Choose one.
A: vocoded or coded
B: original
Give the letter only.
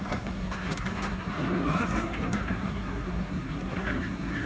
A